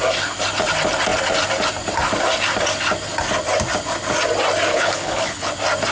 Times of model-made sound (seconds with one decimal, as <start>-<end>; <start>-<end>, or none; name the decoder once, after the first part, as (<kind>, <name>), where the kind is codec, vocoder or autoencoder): 4.7-5.5 (codec, HILCodec)

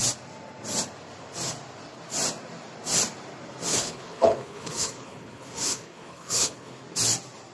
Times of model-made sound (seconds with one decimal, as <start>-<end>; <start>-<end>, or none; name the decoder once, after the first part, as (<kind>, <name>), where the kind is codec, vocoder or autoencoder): 3.7-6.8 (codec, HILCodec)

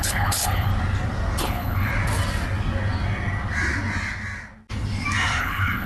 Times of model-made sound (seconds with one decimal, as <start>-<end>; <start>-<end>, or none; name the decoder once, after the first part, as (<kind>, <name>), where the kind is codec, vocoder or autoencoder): 0.0-0.7 (codec, HILCodec); 1.4-1.9; 5.4-5.9

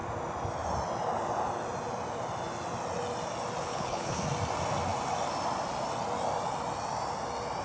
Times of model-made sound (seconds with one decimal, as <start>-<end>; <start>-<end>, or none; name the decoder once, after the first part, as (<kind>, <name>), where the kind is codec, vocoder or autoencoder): 3.6-4.2 (codec, HILCodec)

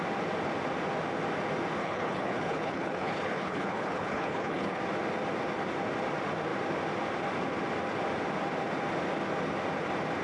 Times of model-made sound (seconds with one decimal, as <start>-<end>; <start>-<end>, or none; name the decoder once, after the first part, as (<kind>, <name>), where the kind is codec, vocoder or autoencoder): 1.8-4.8 (codec, HILCodec)

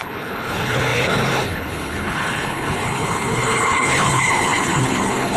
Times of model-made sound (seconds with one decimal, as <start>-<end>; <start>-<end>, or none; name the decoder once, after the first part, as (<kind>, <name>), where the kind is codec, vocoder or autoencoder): 0.0-5.4 (codec, HILCodec)